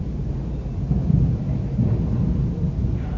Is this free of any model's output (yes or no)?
yes